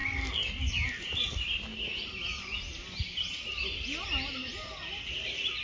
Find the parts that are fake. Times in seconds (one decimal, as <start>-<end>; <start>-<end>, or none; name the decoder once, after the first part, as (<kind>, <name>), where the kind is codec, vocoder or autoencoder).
0.0-0.6 (codec, DAC)

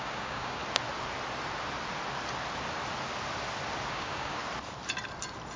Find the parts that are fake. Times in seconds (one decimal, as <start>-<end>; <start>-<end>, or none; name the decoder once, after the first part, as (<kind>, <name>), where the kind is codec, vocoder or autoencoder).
0.0-0.6 (codec, DAC); 3.9-4.4

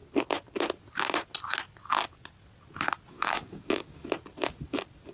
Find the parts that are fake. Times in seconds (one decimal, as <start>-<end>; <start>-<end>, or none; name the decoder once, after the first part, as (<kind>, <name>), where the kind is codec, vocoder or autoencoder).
3.1-4.0 (codec, DAC)

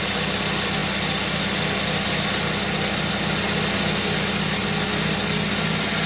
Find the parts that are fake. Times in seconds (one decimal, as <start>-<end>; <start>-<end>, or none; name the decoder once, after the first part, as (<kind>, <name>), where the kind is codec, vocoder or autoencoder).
none

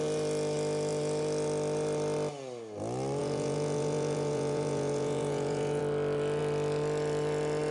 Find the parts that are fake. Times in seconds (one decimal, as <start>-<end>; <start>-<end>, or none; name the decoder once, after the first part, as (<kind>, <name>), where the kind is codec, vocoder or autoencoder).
3.2-5.8 (vocoder, Vocos)

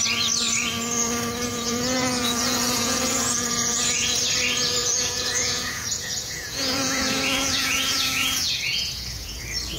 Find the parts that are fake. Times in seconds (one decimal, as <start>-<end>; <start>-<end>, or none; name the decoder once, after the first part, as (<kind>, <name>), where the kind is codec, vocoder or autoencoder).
1.5-4.2 (vocoder, Vocos); 4.8-9.4

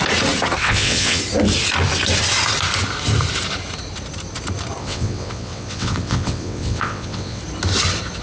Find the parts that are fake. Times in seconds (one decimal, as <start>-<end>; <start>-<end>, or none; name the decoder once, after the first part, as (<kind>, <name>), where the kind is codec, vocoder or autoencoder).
0.6-1.2 (vocoder, WaveNeXt); 4.8-7.4

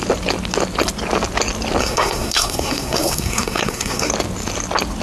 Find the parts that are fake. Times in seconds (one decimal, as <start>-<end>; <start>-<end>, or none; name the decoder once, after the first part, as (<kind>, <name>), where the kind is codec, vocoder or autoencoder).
1.8-4.1 (codec, SNAC)